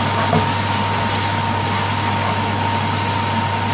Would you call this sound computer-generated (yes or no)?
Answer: no